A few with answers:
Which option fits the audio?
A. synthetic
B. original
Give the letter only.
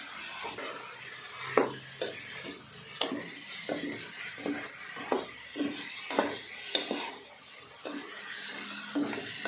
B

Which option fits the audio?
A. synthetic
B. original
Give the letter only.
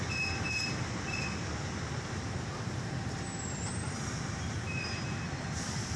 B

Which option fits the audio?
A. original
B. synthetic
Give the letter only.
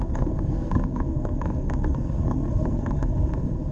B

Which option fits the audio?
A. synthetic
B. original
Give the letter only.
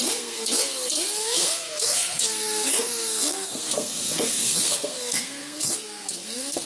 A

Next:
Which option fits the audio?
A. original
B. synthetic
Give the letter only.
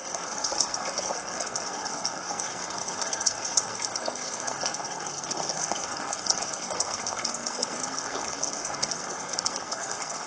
B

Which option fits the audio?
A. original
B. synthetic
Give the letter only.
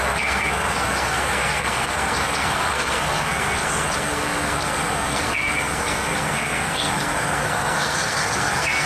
B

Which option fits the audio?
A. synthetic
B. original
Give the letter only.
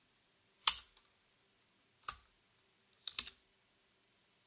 B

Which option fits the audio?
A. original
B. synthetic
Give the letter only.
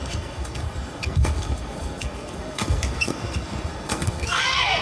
B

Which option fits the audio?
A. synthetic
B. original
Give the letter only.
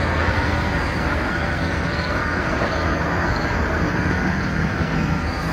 A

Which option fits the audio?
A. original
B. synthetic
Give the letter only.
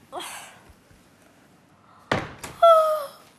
A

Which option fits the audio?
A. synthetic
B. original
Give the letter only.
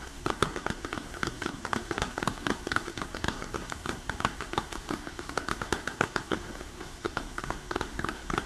A